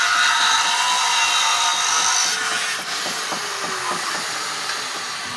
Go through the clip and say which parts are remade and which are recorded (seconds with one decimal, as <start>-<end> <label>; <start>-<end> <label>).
0.0-5.4 recorded